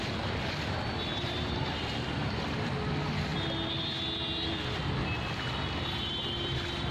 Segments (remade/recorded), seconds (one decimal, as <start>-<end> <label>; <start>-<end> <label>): 0.0-1.1 recorded; 1.1-2.4 remade; 2.4-6.9 recorded